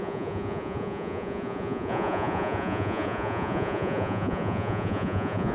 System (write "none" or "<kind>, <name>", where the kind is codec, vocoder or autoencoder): vocoder, Vocos